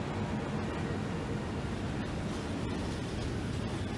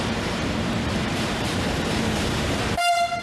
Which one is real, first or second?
first